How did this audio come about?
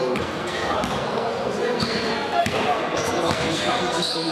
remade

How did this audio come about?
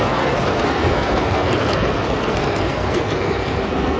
remade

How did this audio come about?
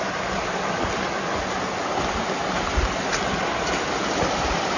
recorded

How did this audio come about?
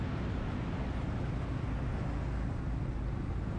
recorded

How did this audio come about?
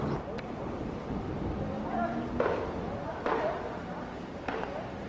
recorded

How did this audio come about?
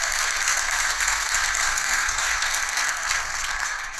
remade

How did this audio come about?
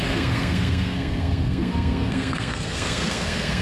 remade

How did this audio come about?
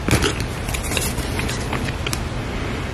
recorded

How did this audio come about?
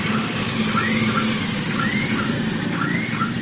recorded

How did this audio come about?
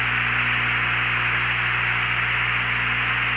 recorded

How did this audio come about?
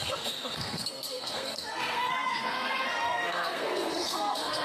remade